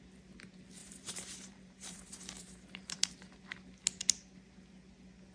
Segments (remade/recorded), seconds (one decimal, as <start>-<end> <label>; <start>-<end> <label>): 0.0-0.8 recorded; 0.8-3.1 remade; 3.1-5.3 recorded